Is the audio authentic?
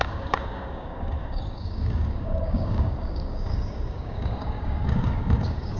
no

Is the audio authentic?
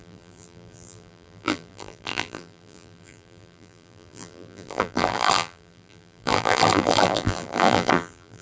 no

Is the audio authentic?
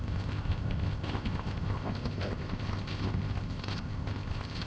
no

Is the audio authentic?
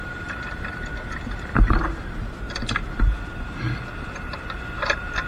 no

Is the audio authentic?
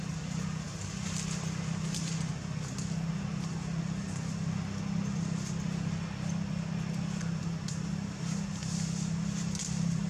yes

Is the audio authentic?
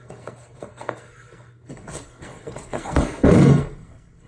no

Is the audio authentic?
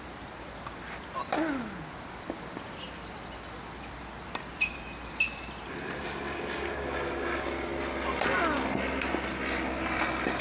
yes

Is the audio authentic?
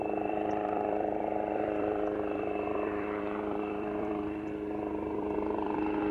no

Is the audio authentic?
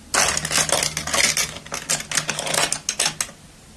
yes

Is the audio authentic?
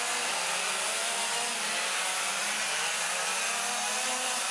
yes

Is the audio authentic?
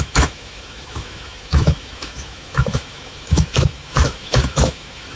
no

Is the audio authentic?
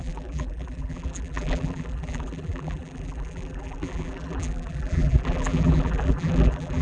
no